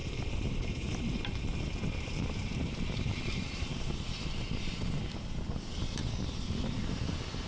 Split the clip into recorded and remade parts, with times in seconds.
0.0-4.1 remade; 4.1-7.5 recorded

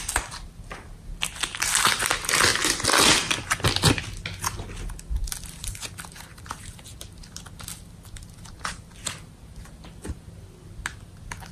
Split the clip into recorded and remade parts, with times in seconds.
0.0-11.5 recorded

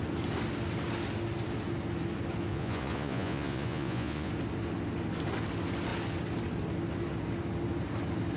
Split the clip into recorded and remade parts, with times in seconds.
0.0-2.5 recorded; 2.5-4.3 remade; 4.3-8.4 recorded

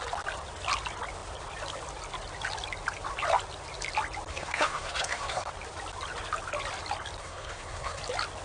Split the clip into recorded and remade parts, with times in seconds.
0.0-4.3 recorded; 4.3-5.5 remade; 5.5-7.2 recorded; 7.2-8.0 remade; 8.0-8.4 recorded

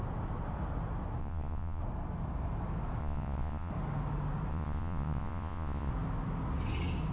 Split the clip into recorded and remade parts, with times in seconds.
0.0-1.2 recorded; 1.2-1.8 remade; 1.8-3.0 recorded; 3.0-3.7 remade; 3.7-4.5 recorded; 4.5-5.9 remade; 5.9-7.1 recorded

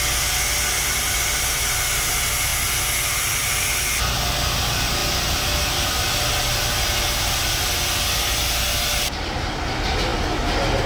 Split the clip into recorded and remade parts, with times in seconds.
0.0-10.9 recorded

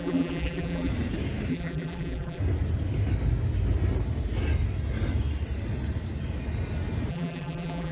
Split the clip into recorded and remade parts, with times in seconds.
0.0-0.9 remade; 0.9-1.5 recorded; 1.5-2.4 remade; 2.4-7.1 recorded; 7.1-7.9 remade

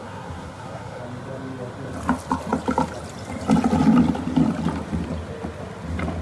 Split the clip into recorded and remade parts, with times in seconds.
0.0-1.0 remade; 1.0-6.2 recorded